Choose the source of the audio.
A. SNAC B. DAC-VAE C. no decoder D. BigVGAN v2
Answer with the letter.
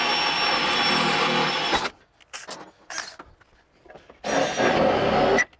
C